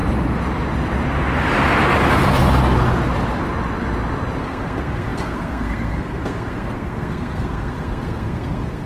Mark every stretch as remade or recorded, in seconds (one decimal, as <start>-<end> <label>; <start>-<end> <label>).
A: 0.0-4.4 recorded; 4.4-8.9 remade